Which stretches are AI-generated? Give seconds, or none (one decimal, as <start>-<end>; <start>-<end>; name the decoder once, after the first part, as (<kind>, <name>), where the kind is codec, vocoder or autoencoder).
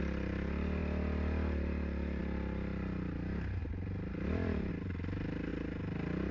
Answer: 3.6-4.7 (vocoder, BigVGAN v2)